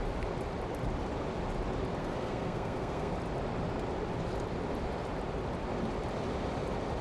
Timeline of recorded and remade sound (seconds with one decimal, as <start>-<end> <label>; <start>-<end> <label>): 0.0-2.0 recorded; 2.0-3.1 remade; 3.1-7.0 recorded